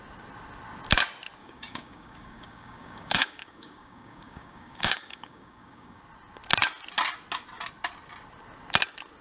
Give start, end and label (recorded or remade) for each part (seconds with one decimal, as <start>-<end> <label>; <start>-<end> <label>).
0.0-1.4 recorded; 1.4-6.0 remade; 6.0-9.2 recorded